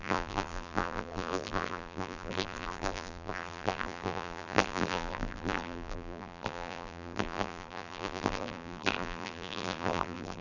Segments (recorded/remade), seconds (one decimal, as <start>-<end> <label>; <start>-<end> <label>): 0.0-10.4 remade